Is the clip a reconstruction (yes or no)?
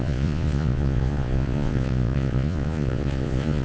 yes